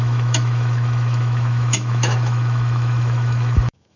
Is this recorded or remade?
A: remade